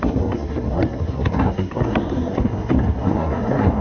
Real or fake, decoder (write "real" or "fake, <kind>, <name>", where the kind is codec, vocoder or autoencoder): fake, codec, SNAC